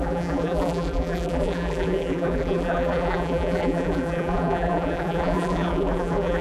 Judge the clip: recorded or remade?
remade